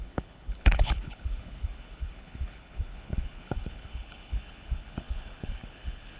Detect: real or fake fake